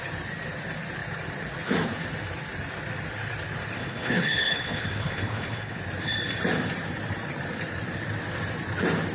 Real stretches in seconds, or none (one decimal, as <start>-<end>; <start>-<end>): 0.0-3.8; 5.8-9.1